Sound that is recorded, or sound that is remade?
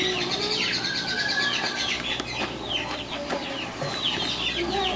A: recorded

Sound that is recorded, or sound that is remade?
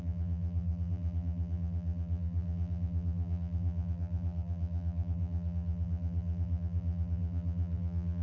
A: remade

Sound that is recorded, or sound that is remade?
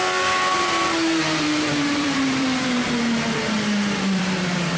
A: remade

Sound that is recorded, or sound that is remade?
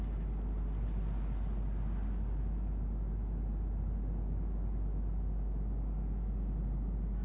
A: remade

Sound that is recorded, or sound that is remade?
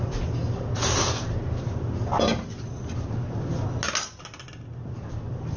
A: recorded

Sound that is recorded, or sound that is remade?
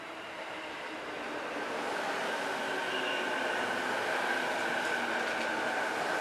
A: recorded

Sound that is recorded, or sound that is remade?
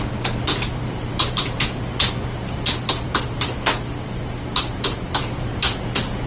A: recorded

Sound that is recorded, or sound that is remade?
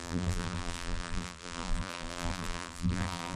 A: remade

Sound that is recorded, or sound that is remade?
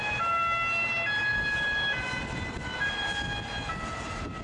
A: recorded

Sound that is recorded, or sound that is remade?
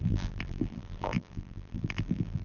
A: remade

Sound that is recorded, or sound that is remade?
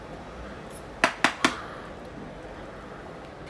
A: recorded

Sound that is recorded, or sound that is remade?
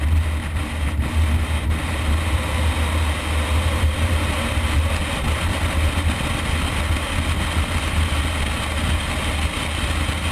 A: recorded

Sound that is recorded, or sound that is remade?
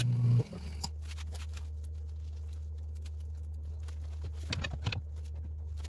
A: recorded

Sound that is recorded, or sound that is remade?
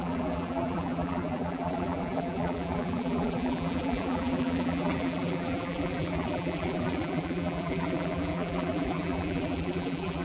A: remade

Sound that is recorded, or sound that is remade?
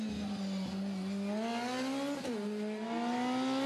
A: recorded